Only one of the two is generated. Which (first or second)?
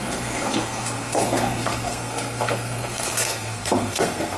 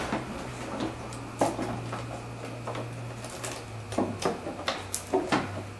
first